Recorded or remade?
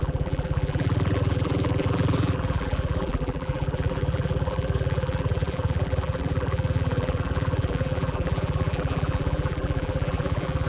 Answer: remade